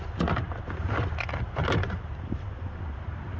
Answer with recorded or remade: recorded